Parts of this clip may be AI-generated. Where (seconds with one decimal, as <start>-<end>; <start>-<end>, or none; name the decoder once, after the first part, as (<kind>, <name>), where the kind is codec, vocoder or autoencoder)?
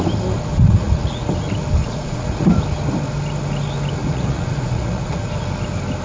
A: 0.5-1.3 (vocoder, Vocos); 1.8-2.5; 4.0-5.3